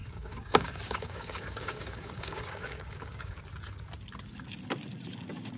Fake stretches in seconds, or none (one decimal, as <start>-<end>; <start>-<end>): 0.0-3.4